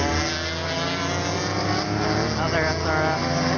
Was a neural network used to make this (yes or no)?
no